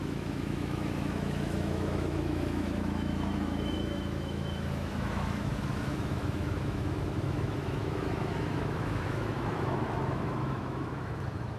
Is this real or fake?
fake